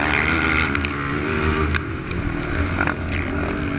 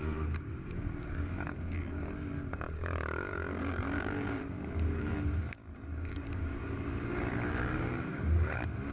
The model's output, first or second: second